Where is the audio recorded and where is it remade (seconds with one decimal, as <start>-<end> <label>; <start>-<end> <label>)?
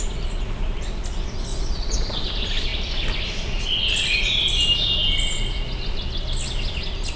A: 0.0-1.5 recorded; 1.5-2.3 remade; 2.3-7.2 recorded